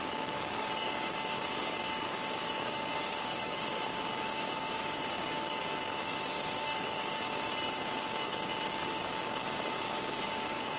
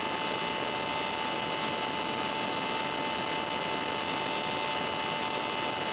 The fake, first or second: first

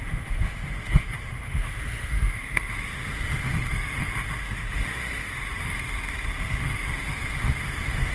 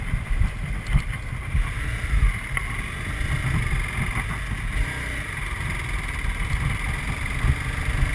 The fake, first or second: first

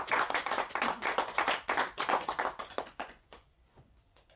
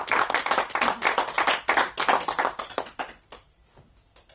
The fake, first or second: first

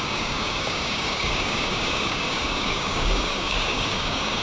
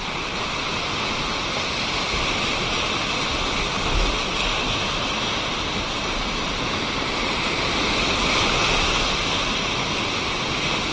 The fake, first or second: first